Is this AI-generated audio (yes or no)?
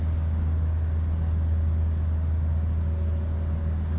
no